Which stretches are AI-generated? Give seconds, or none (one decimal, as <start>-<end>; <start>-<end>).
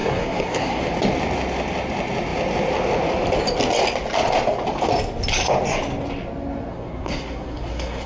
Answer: 0.0-0.8; 6.7-8.1